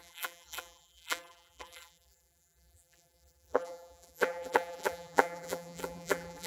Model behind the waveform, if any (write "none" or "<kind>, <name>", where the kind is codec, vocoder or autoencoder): vocoder, BigVGAN v2